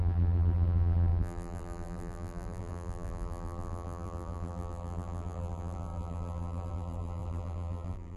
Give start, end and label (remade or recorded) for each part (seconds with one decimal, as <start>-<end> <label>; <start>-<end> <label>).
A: 0.0-8.2 remade